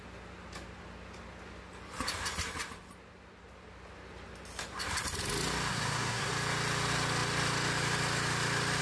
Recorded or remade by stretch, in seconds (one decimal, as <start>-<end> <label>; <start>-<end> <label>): 0.0-5.7 recorded; 5.7-6.3 remade; 6.3-8.8 recorded

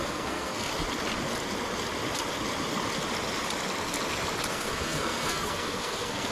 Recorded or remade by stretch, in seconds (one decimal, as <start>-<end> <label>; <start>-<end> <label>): 0.0-0.7 remade; 0.7-4.5 recorded; 4.5-6.3 remade

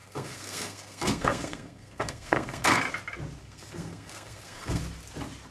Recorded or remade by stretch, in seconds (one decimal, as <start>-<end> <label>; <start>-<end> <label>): 0.0-2.8 remade; 2.8-3.4 recorded; 3.4-4.8 remade; 4.8-5.5 recorded

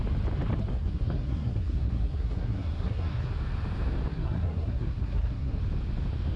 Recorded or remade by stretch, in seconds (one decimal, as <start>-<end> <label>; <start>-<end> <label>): 0.0-0.7 recorded; 0.7-3.3 remade; 3.3-4.1 recorded; 4.1-5.6 remade; 5.6-6.4 recorded